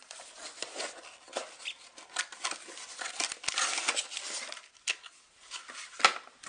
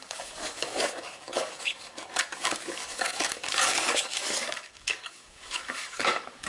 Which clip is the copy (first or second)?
second